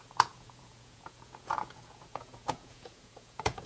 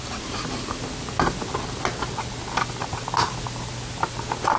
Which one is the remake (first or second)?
first